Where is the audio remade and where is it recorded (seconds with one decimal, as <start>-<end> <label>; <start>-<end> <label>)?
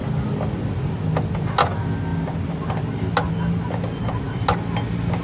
0.0-5.2 recorded